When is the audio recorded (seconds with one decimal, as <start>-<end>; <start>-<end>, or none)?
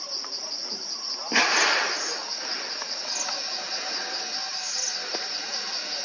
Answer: 0.0-6.0